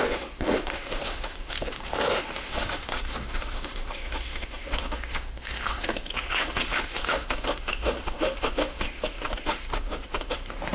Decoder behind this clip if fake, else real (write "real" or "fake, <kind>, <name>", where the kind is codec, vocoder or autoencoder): fake, autoencoder, DAC-VAE